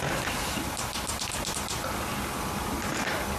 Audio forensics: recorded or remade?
recorded